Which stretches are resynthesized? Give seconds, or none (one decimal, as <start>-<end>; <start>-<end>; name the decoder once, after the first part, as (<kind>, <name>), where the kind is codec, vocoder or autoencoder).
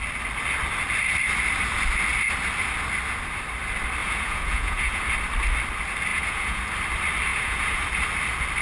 4.0-5.0 (vocoder, Vocos); 6.1-6.7; 7.3-7.8